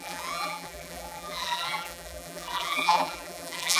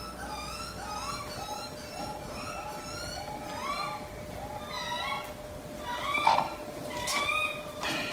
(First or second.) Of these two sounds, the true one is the second